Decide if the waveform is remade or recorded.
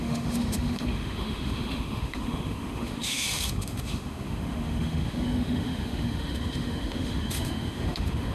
remade